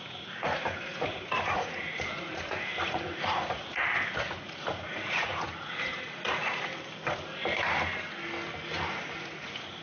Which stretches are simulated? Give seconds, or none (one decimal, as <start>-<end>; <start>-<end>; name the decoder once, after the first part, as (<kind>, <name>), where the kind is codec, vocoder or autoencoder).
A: 0.0-6.7 (vocoder, Vocos); 8.9-9.8